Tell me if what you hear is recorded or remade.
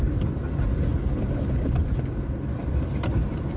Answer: recorded